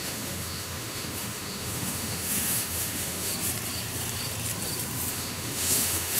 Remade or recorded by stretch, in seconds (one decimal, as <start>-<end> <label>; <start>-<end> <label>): 0.0-3.3 remade; 3.3-5.1 recorded; 5.1-6.2 remade